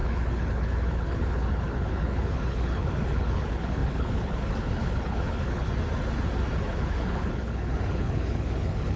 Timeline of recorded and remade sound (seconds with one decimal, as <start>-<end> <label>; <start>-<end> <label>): 0.0-5.7 remade; 5.7-6.7 recorded; 6.7-9.0 remade